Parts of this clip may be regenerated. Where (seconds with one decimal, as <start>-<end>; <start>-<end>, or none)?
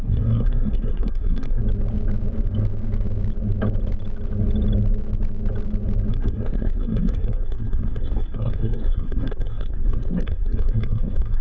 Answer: 0.0-1.6; 6.1-11.4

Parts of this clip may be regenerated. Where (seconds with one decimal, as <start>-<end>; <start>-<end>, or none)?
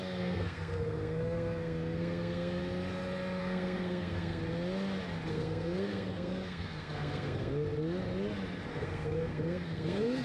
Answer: 0.0-2.6; 3.4-4.4; 5.3-7.5; 8.7-10.2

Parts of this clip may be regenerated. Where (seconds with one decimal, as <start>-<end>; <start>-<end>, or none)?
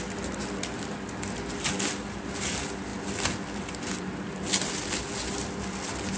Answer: none